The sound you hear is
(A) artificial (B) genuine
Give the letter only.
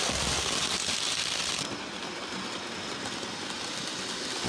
B